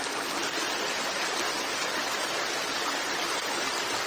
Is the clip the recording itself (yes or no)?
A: yes